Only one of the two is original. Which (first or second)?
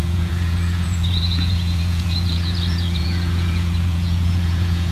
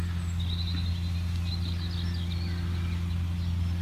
second